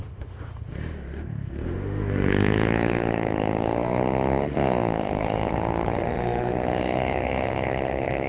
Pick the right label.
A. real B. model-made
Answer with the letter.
B